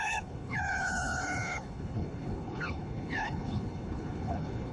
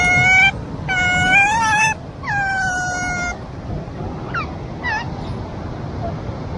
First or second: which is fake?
first